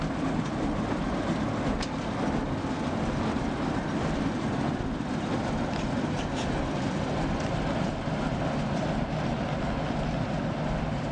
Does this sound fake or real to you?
real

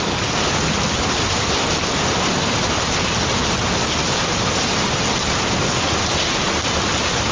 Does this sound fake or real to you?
real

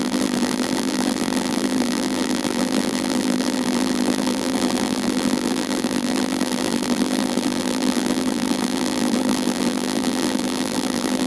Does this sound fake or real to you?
fake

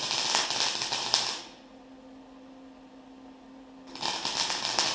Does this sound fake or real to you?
real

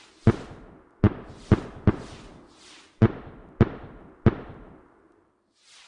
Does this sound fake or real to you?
real